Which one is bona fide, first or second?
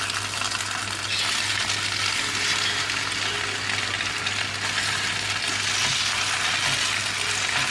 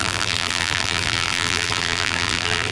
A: first